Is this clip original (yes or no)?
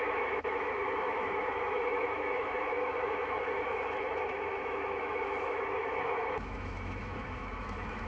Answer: no